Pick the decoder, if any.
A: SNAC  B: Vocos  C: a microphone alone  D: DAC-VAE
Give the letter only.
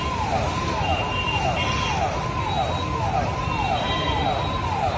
C